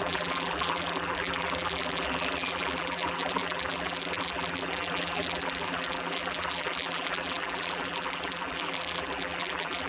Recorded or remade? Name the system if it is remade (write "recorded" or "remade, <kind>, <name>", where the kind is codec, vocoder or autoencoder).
remade, vocoder, BigVGAN v2